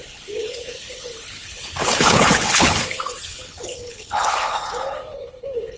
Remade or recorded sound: remade